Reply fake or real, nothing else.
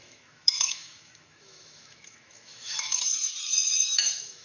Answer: fake